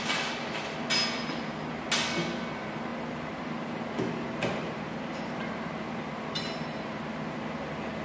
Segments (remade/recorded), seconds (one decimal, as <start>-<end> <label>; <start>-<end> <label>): 0.0-8.0 recorded